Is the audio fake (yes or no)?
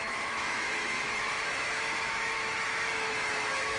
yes